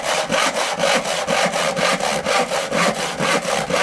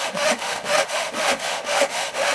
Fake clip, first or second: second